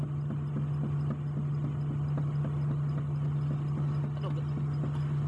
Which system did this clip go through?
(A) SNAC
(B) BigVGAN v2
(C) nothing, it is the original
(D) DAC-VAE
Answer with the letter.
C